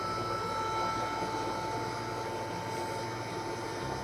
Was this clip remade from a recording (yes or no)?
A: no